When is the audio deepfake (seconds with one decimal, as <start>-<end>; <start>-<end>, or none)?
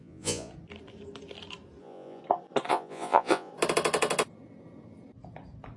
0.0-0.5; 1.8-2.2; 2.7-3.5